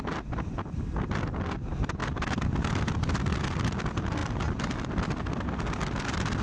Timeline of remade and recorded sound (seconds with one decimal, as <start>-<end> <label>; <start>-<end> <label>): 0.0-6.4 recorded